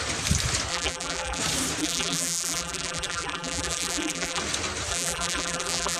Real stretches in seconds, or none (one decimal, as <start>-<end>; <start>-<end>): 0.0-0.7; 1.4-1.8; 4.4-4.9